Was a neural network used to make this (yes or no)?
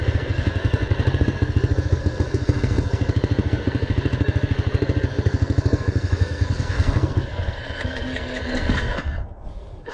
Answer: yes